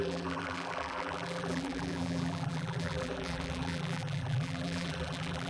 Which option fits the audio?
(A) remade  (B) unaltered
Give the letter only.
A